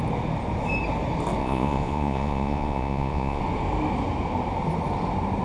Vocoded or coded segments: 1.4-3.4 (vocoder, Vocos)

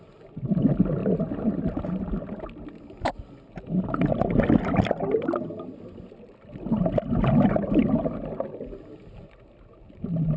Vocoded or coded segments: none

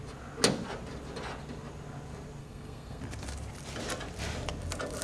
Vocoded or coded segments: 2.4-3.0 (codec, SNAC)

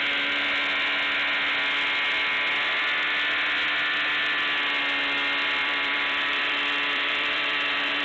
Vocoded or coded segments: 5.6-8.0 (vocoder, BigVGAN v2)

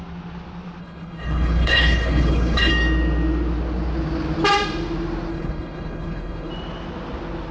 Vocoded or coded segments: 0.8-2.7 (codec, HILCodec); 5.3-6.5